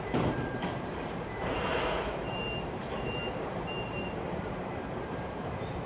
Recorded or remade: remade